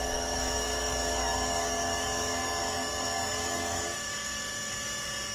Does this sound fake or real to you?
fake